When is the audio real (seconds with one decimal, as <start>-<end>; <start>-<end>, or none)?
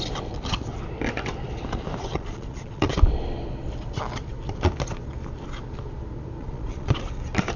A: 0.0-2.1; 2.9-6.4; 6.9-7.6